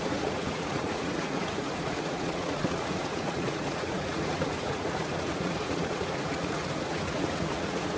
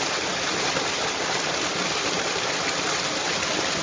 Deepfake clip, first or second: first